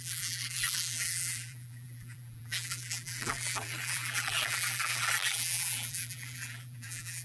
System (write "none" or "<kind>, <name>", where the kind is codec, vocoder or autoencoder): vocoder, BigVGAN v2